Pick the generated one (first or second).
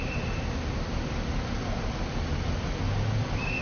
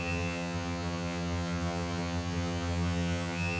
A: second